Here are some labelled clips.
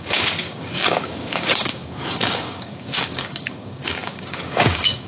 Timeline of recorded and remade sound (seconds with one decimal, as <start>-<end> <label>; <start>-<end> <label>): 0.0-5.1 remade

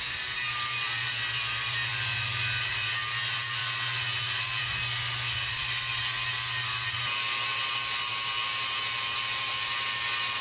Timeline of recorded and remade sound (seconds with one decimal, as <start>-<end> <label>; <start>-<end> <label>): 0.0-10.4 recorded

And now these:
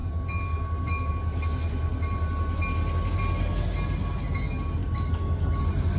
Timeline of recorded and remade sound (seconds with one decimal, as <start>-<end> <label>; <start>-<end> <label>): 0.0-1.1 remade; 1.1-4.8 recorded; 4.8-5.6 remade; 5.6-6.0 recorded